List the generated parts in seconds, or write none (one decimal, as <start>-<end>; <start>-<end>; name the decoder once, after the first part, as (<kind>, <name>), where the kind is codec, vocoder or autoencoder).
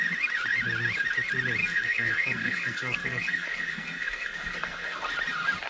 1.6-5.0 (codec, SNAC)